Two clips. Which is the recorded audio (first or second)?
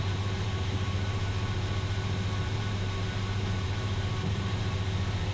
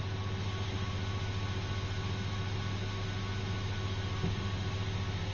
second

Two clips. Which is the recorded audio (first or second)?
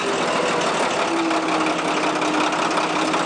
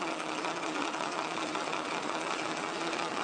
first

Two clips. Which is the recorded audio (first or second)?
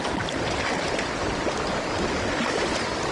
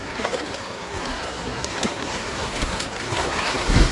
first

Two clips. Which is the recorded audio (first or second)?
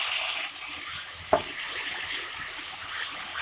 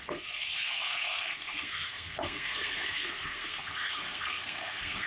first